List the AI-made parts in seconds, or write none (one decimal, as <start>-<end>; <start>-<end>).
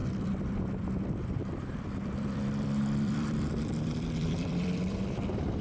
0.0-5.6